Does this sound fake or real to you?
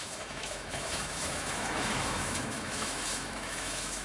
fake